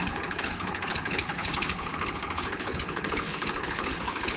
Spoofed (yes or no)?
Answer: yes